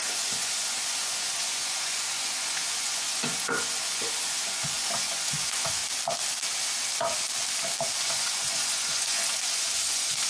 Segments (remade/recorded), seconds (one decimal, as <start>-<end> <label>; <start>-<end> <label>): 0.0-5.8 remade; 5.8-8.0 recorded; 8.0-10.3 remade